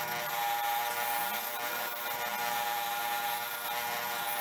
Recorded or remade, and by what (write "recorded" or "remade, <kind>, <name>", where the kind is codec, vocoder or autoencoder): recorded